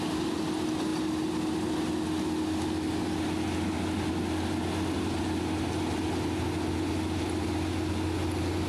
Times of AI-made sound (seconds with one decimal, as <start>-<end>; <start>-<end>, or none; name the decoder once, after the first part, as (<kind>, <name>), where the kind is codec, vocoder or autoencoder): none